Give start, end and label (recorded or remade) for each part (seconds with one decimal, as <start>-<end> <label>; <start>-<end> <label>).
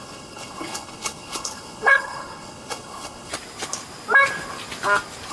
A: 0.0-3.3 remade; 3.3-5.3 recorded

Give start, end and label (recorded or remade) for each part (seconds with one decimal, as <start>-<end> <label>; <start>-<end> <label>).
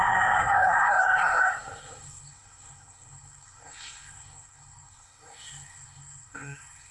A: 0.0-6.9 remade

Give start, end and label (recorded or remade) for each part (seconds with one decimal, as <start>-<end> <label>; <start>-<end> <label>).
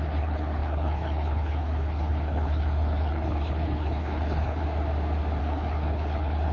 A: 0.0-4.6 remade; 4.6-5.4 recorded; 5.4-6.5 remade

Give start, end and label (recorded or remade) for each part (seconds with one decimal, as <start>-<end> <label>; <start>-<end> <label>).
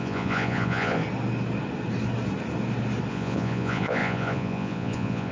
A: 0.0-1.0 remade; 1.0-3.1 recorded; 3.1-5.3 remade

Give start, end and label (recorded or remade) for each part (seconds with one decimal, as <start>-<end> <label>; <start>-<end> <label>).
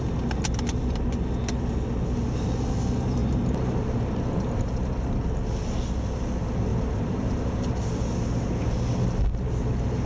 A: 0.0-3.2 recorded; 3.2-4.2 remade; 4.2-6.7 recorded; 6.7-7.7 remade; 7.7-10.1 recorded